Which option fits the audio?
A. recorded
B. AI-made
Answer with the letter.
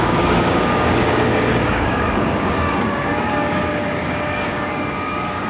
B